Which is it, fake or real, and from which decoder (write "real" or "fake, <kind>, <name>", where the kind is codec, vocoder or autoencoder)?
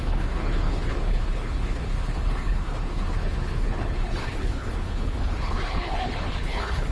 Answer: fake, codec, HILCodec